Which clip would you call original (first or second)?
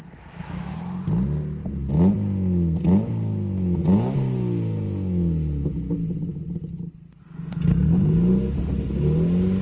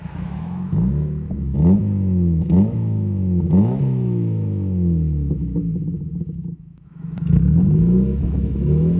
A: first